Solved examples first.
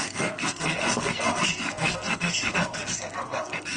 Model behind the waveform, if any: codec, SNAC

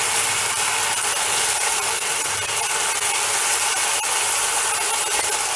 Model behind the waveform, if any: none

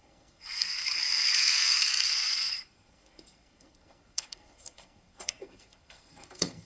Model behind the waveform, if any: codec, SNAC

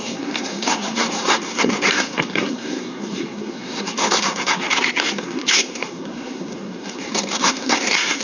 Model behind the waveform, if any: codec, SNAC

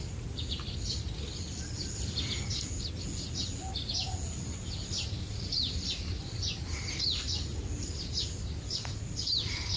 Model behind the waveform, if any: none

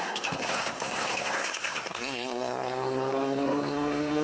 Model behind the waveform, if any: codec, SNAC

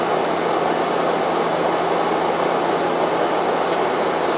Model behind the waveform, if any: none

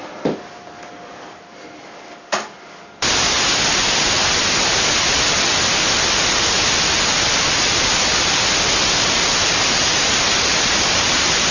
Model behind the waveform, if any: none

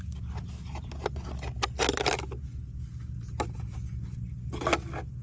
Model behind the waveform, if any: none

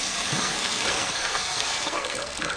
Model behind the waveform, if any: codec, SNAC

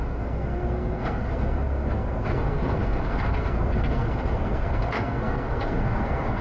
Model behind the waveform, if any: codec, SNAC